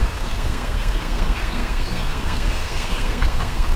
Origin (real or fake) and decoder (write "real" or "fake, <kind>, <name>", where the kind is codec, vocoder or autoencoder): fake, codec, SNAC